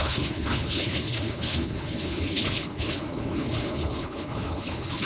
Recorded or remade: remade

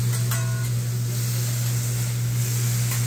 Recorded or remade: recorded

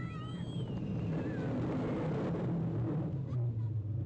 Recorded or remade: remade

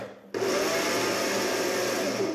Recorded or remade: recorded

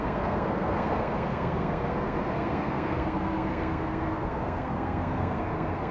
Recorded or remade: remade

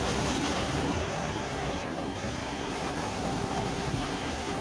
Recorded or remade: remade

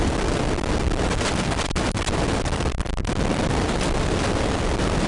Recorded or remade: remade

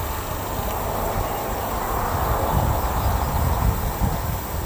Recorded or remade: recorded